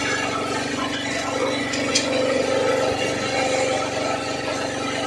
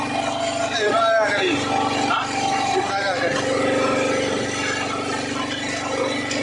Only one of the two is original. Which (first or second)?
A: second